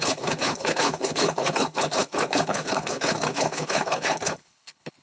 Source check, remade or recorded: remade